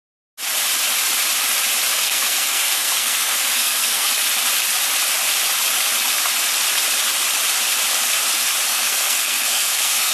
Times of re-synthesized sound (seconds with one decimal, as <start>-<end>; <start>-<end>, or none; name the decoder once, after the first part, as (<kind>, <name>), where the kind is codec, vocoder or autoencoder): 1.9-4.1 (codec, SNAC); 8.7-10.1